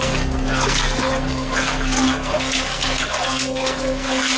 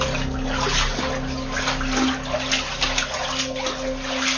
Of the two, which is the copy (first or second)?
first